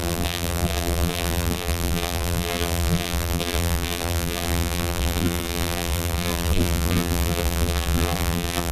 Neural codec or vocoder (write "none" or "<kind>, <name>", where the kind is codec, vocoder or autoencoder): vocoder, BigVGAN v2